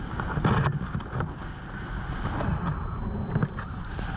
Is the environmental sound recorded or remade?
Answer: recorded